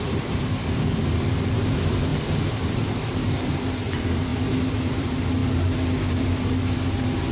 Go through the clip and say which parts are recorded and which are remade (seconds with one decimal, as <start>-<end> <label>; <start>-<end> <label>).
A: 0.0-4.3 remade; 4.3-5.0 recorded; 5.0-5.4 remade; 5.4-6.1 recorded; 6.1-7.3 remade